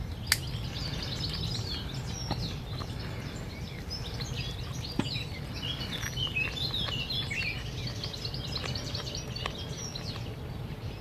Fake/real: real